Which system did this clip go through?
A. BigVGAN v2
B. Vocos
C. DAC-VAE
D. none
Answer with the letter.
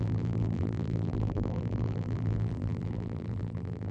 A